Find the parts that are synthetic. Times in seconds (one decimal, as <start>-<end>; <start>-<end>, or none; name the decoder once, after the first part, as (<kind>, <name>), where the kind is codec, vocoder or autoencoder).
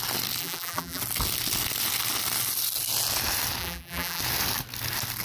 0.4-1.0 (vocoder, BigVGAN v2); 3.6-4.2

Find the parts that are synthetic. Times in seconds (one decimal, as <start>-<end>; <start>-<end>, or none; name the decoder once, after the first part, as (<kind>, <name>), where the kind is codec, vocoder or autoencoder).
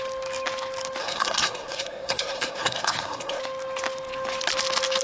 1.0-3.4 (codec, SNAC)